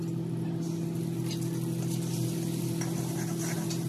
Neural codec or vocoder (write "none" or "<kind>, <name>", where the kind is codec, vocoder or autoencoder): none